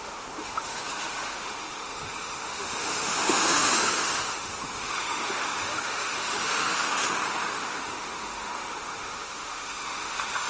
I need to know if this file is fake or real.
fake